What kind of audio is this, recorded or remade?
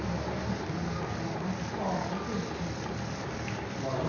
recorded